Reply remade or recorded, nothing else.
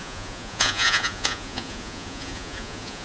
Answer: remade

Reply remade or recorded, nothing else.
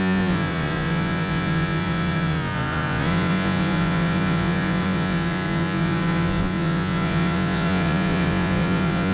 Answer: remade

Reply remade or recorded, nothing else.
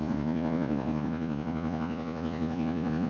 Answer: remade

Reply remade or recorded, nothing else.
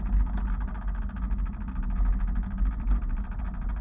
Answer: recorded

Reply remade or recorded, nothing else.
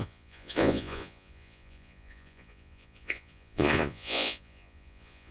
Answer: remade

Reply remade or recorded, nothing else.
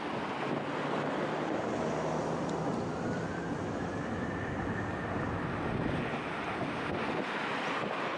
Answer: recorded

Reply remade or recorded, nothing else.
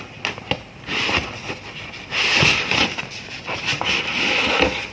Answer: recorded